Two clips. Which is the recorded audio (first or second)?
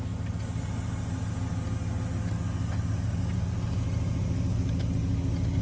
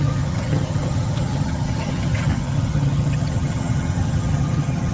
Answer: first